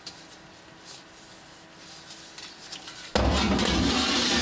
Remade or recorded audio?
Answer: recorded